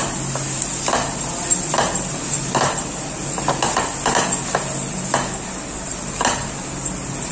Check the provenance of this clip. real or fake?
real